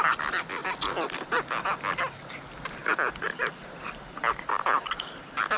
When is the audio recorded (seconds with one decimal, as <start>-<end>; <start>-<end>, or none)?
0.0-5.6